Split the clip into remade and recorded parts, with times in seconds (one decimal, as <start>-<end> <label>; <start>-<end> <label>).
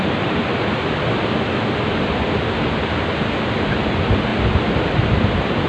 0.0-0.5 remade; 0.5-3.6 recorded; 3.6-4.3 remade; 4.3-4.9 recorded; 4.9-5.7 remade